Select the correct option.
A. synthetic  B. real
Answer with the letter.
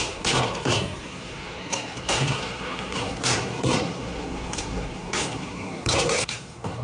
A